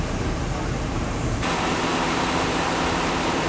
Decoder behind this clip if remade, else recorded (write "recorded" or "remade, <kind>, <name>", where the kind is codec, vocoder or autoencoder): remade, vocoder, BigVGAN v2